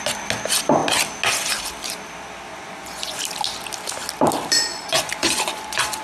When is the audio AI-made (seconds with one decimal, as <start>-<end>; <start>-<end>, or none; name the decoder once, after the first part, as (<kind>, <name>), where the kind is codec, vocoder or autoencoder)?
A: 2.5-3.2 (vocoder, Vocos); 4.7-6.0